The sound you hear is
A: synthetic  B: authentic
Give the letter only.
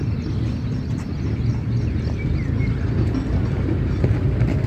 B